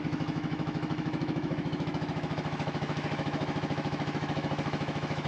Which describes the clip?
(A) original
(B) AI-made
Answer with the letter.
B